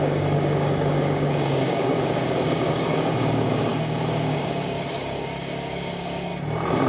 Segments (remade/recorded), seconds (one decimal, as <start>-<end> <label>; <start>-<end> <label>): 0.0-6.3 remade; 6.3-6.9 recorded